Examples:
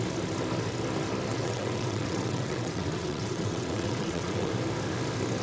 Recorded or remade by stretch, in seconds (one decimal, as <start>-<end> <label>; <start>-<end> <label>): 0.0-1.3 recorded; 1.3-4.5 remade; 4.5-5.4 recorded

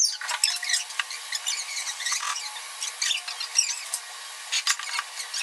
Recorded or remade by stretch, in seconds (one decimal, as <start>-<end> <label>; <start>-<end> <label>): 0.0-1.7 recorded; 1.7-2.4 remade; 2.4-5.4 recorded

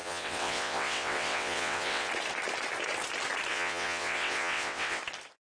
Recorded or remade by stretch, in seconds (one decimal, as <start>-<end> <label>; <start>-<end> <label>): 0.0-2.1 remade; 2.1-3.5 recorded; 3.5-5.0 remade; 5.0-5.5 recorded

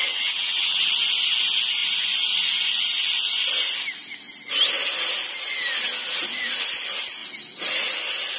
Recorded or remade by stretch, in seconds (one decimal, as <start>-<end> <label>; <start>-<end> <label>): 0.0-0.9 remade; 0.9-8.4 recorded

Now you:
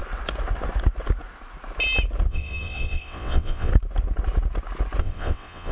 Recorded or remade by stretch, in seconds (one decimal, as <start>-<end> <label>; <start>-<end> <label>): 0.0-2.3 recorded; 2.3-3.7 remade; 3.7-5.0 recorded; 5.0-5.7 remade

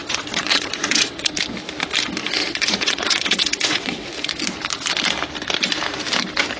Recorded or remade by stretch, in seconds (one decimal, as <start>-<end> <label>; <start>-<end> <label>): 0.0-1.3 remade; 1.3-2.2 recorded; 2.2-4.1 remade; 4.1-6.6 recorded